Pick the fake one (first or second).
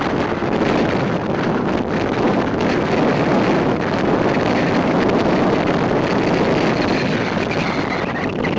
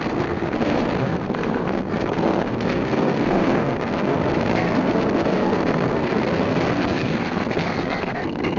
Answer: second